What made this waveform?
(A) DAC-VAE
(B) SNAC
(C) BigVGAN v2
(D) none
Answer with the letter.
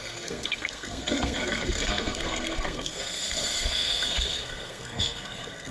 B